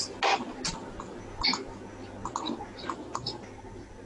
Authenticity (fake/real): real